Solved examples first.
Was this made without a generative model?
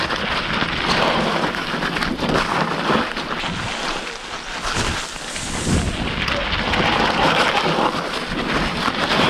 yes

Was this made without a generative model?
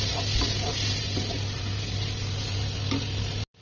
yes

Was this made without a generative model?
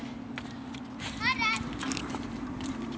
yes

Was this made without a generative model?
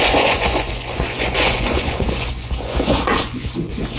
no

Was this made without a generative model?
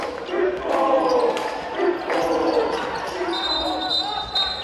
yes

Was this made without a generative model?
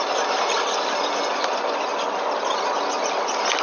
yes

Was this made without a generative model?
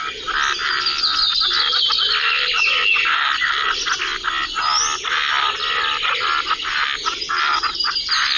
yes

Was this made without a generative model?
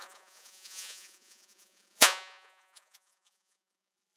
no